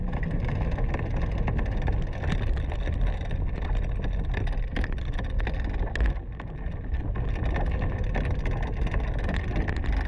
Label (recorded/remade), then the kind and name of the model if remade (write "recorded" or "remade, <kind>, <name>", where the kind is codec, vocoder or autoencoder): recorded